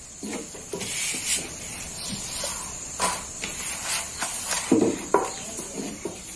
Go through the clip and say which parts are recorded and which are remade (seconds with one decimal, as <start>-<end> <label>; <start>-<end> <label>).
0.0-4.3 recorded; 4.3-5.4 remade; 5.4-6.4 recorded